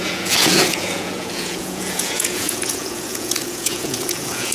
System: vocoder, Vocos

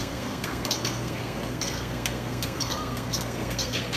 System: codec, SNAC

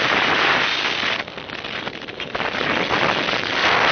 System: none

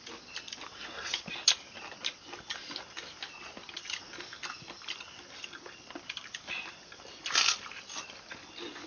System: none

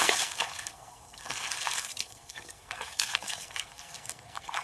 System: codec, SNAC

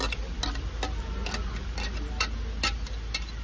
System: none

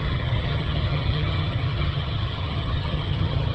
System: vocoder, HiFi-GAN